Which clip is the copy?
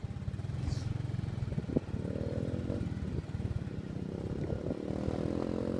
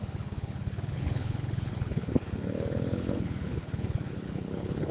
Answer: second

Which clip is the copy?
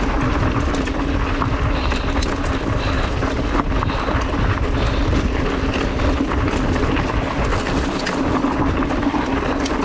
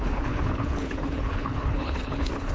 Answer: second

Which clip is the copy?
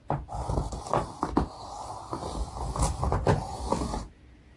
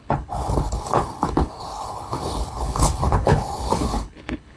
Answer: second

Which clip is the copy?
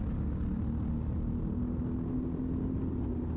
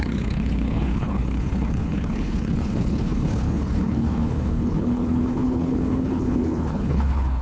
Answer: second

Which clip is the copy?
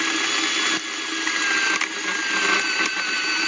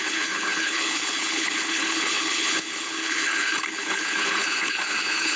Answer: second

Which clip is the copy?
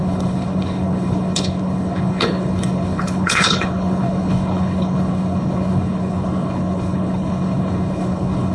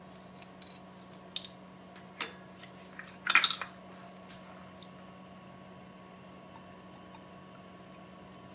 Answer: first